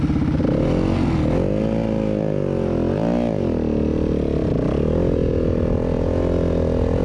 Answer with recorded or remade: recorded